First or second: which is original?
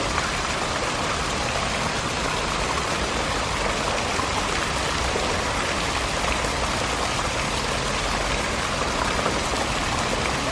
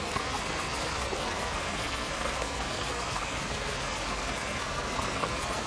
first